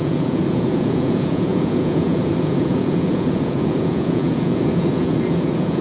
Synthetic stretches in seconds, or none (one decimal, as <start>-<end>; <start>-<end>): 0.0-5.8